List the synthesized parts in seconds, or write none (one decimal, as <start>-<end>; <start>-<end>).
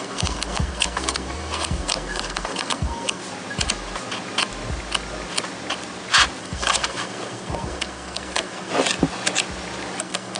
0.0-3.2; 6.4-8.7; 10.0-10.4